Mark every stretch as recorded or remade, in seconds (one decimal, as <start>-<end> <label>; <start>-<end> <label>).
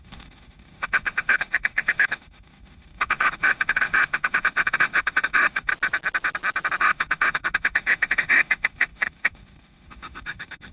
0.0-5.7 remade; 5.7-6.8 recorded; 6.8-10.7 remade